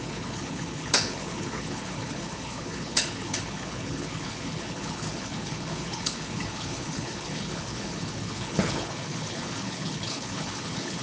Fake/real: fake